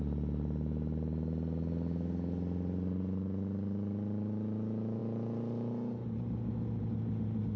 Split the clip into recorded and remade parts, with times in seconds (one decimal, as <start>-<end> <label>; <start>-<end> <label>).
0.0-7.6 recorded